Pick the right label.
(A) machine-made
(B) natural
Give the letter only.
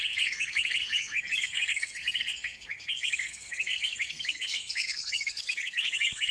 A